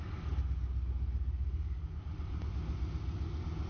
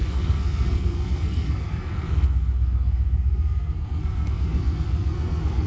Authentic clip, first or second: first